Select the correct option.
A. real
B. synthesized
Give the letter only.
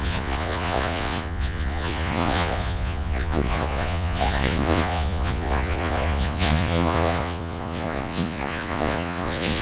B